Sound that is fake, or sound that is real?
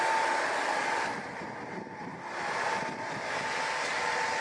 real